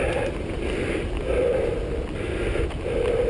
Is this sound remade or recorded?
recorded